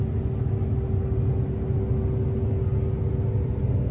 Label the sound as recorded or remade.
recorded